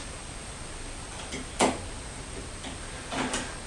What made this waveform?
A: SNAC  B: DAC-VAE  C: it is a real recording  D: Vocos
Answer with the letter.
C